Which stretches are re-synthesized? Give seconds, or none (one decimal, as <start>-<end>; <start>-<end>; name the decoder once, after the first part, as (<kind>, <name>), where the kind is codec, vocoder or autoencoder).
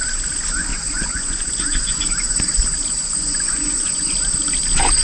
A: 0.7-2.0 (vocoder, Vocos); 3.0-4.1